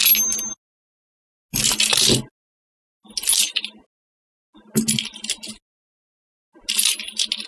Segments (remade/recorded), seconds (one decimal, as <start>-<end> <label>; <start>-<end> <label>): 0.0-7.5 recorded